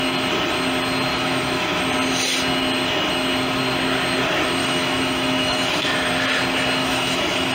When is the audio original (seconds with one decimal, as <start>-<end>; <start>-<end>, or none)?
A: 0.0-1.1; 1.8-4.6; 6.1-6.8